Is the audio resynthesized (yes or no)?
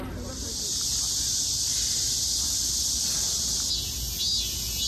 no